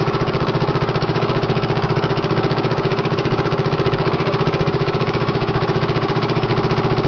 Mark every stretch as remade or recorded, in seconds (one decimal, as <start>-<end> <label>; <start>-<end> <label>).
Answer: 0.0-6.5 remade; 6.5-7.1 recorded